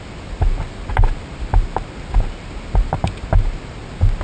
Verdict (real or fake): real